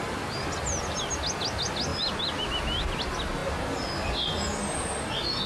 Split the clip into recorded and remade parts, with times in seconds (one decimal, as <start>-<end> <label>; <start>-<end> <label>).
0.0-5.5 recorded